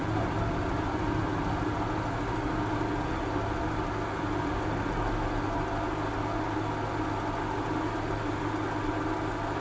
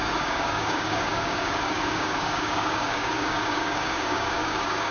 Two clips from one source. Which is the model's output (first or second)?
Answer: second